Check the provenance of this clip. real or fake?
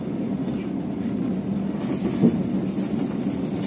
real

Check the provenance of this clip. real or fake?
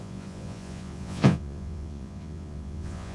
fake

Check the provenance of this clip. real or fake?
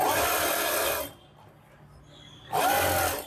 real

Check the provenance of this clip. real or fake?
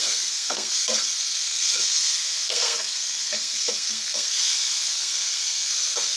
fake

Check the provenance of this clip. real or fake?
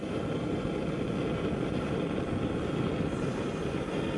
real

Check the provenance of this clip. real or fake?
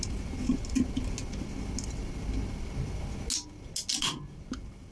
real